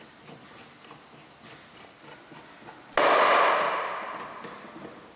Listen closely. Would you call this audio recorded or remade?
recorded